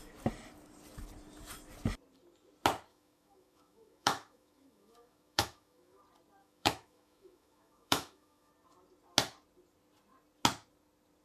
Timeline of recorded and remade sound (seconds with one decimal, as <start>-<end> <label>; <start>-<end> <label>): 0.0-2.9 recorded; 2.9-6.0 remade; 6.0-6.4 recorded; 6.4-8.5 remade; 8.5-11.2 recorded